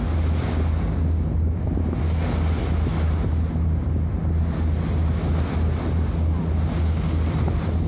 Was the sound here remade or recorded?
recorded